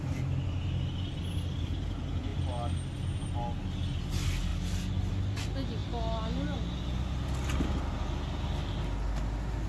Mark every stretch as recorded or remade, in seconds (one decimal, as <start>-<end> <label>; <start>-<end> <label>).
0.0-9.7 recorded